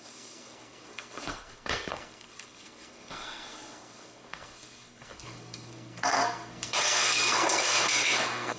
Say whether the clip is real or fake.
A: fake